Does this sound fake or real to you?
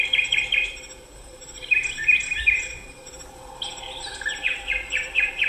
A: fake